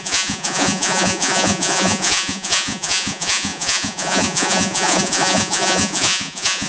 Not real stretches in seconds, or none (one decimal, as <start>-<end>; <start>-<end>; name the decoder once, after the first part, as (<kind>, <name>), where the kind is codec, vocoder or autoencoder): 0.0-6.7 (vocoder, Vocos)